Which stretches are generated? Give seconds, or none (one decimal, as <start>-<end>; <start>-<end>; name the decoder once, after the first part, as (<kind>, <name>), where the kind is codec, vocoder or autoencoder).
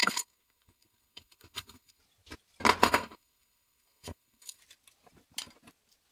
0.0-2.0 (codec, SNAC); 2.8-4.6